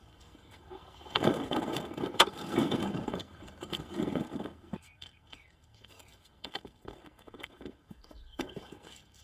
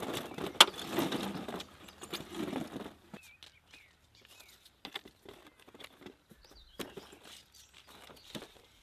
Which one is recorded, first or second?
second